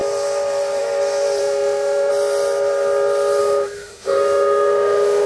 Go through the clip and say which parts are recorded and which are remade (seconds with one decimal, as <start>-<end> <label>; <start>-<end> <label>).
0.0-1.4 recorded; 1.4-2.1 remade; 2.1-3.4 recorded; 3.4-5.3 remade